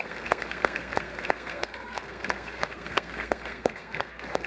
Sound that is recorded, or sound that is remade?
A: remade